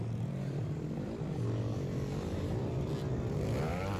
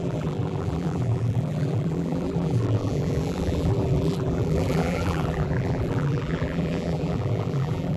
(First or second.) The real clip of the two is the first